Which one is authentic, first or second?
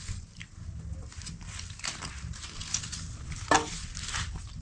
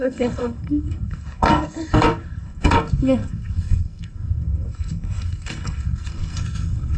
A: first